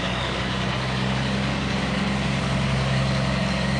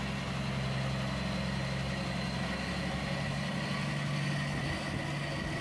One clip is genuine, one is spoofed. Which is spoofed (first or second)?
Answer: first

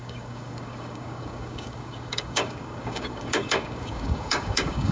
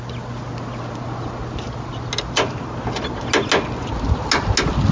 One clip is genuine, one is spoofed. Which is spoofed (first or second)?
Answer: first